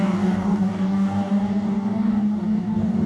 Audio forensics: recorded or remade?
remade